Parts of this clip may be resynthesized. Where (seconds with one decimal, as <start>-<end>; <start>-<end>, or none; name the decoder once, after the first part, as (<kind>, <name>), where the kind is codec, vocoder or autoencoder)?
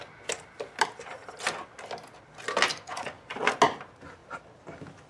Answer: 2.7-3.5 (vocoder, Vocos)